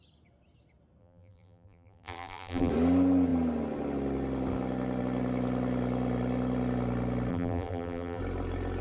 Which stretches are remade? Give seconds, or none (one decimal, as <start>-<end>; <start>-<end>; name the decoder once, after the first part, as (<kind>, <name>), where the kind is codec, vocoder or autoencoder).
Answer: 1.0-2.7 (vocoder, BigVGAN v2); 7.3-8.2